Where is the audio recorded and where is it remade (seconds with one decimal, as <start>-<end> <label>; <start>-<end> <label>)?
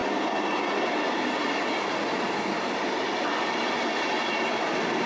0.0-5.1 recorded